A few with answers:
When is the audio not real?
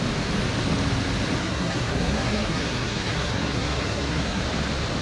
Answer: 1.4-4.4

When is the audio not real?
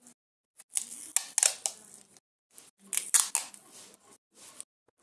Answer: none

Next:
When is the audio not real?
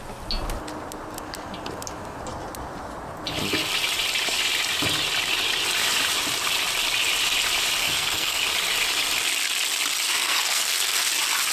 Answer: 7.8-8.4; 10.1-11.1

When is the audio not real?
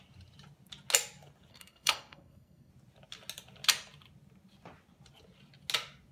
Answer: 1.5-2.7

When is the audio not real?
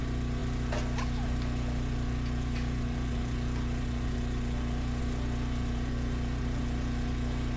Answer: none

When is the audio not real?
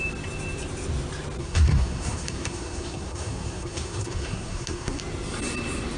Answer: 1.4-5.0